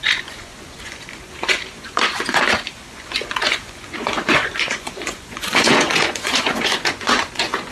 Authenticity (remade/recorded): remade